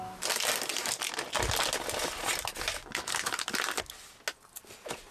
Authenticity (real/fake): real